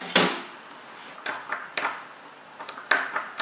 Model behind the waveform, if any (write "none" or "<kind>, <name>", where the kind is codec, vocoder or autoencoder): none